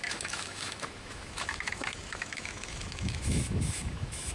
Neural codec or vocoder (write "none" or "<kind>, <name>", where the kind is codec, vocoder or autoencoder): autoencoder, DAC-VAE